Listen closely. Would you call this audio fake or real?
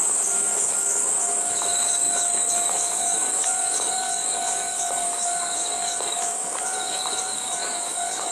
fake